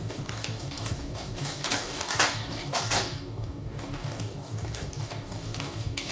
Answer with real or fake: fake